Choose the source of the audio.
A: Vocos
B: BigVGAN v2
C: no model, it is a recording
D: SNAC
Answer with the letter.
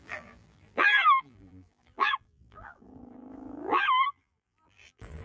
B